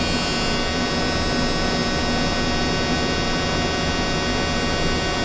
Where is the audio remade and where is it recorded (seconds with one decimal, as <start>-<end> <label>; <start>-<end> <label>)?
0.0-5.2 recorded